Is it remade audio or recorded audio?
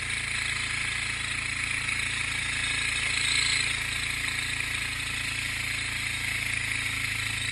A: recorded